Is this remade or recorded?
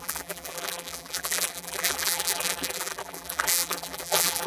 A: remade